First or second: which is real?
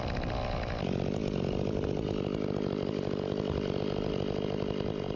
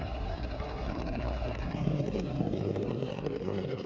first